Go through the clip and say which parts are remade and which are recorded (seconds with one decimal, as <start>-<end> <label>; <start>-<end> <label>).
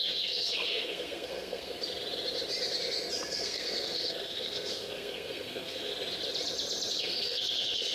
0.0-1.7 remade; 1.7-3.3 recorded; 3.3-5.9 remade; 5.9-6.9 recorded; 6.9-7.9 remade